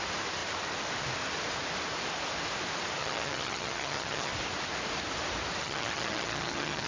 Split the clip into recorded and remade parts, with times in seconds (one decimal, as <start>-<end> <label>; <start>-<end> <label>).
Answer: 0.0-3.0 recorded; 3.0-4.3 remade; 4.3-5.6 recorded; 5.6-6.9 remade